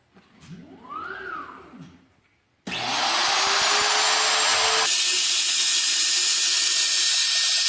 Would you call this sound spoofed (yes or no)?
no